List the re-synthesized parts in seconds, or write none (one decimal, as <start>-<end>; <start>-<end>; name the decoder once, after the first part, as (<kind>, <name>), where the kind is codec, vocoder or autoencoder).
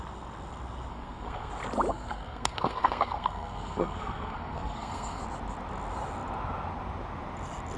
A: 0.9-1.5 (codec, SNAC); 1.9-5.2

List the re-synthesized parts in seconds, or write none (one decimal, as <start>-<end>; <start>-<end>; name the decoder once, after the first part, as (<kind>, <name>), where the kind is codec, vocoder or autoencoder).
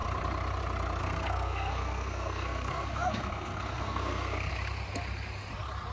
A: 1.0-4.5 (codec, SNAC)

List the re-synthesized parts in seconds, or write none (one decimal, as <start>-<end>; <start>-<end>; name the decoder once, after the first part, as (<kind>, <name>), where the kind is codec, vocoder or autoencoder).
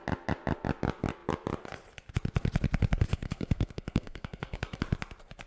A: 3.1-4.8 (codec, SNAC)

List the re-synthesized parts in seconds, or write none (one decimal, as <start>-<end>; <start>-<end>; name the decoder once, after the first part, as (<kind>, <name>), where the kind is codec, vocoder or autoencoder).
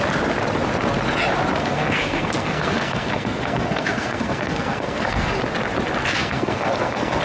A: 1.6-5.3 (codec, SNAC); 6.0-7.2